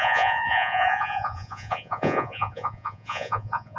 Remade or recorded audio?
remade